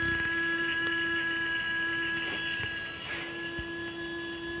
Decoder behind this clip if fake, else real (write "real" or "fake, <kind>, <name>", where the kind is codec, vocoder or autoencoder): fake, vocoder, BigVGAN v2